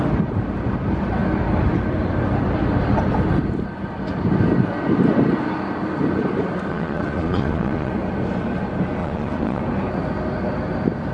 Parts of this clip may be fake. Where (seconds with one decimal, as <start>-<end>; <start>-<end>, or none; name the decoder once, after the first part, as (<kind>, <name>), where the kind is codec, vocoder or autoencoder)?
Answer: 6.7-7.9 (vocoder, Vocos); 9.0-9.6